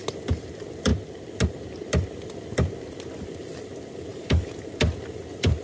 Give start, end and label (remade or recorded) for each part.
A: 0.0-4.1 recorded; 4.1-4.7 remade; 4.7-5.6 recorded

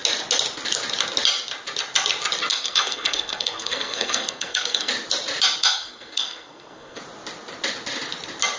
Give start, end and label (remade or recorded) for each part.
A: 0.0-2.5 recorded; 2.5-4.9 remade; 4.9-5.6 recorded; 5.6-7.0 remade; 7.0-8.6 recorded